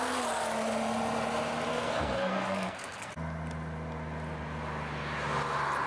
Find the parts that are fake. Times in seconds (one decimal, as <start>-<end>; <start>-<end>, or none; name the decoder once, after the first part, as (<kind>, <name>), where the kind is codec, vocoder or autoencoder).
1.7-3.1 (codec, SNAC)